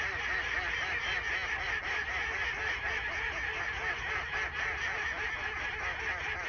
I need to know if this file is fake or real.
real